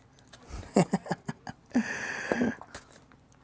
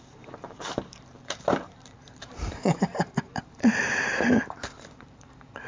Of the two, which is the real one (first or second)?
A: first